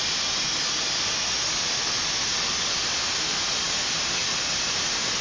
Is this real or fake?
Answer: real